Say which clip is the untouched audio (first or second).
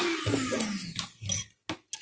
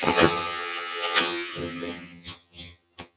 first